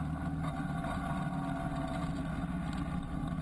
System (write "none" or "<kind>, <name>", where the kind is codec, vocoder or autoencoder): none